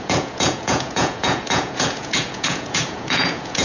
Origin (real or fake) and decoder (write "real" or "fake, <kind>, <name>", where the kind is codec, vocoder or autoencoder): fake, vocoder, Vocos